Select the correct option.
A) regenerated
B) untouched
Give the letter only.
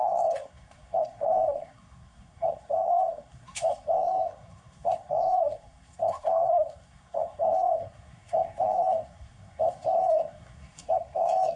A